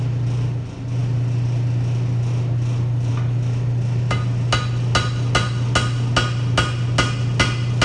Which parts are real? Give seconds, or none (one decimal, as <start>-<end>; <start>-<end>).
0.0-7.8

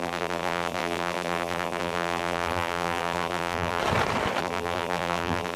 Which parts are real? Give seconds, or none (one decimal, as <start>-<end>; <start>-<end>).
3.8-4.4

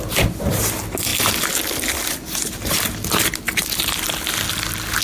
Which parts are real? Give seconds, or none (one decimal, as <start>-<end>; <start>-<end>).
0.0-5.0

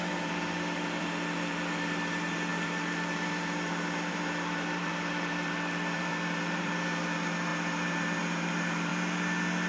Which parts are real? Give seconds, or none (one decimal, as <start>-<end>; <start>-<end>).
8.9-9.7

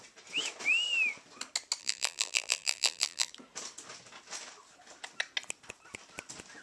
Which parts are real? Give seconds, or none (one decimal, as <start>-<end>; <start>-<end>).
0.0-1.8; 3.3-6.6